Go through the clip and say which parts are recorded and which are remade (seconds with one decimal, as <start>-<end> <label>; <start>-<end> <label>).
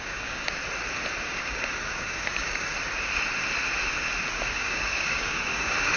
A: 0.0-0.6 remade; 0.6-1.2 recorded; 1.2-2.7 remade; 2.7-4.3 recorded; 4.3-6.0 remade